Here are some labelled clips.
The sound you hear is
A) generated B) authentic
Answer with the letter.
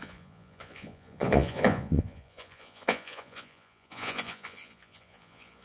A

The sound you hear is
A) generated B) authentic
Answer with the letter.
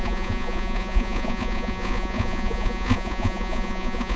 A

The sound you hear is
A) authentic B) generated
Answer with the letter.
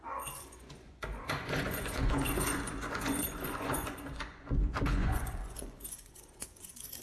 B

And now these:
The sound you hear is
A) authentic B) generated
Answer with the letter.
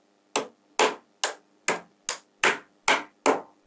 A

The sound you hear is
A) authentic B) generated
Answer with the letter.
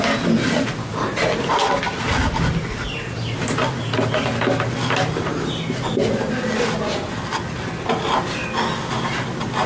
A